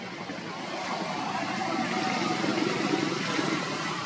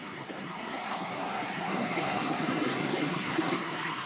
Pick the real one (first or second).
first